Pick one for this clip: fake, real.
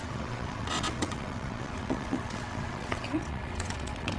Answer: fake